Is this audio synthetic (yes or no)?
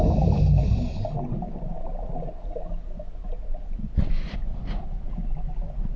no